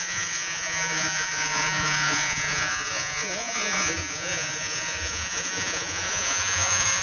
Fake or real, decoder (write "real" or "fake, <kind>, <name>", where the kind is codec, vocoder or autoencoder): fake, vocoder, Vocos